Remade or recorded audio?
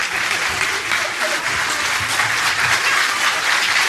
recorded